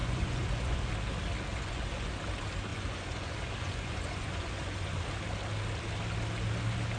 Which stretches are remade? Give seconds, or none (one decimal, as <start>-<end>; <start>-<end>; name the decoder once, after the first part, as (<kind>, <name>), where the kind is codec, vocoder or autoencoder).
0.0-0.9 (vocoder, Vocos); 1.5-2.1; 2.7-5.0